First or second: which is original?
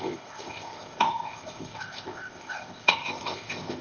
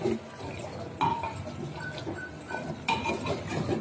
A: second